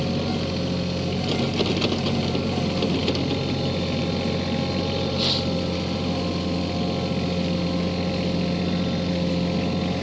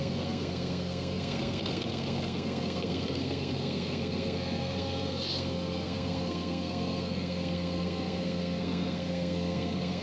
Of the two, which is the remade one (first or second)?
second